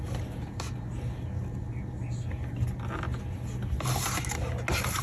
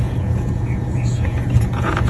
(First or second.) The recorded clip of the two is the first